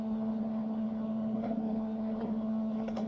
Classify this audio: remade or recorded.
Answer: remade